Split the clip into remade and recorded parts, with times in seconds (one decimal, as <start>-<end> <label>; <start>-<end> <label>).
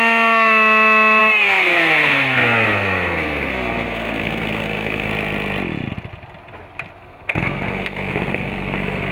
0.0-1.2 recorded; 1.2-5.1 remade; 5.1-7.0 recorded; 7.0-9.1 remade